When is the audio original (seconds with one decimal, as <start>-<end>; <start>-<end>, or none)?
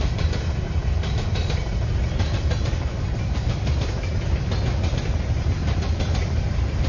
4.1-4.9